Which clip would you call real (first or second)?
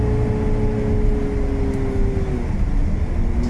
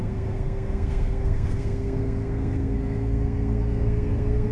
first